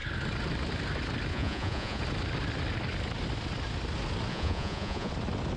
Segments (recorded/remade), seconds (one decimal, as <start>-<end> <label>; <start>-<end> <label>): 0.0-1.3 recorded; 1.3-2.0 remade; 2.0-4.3 recorded; 4.3-5.1 remade; 5.1-5.6 recorded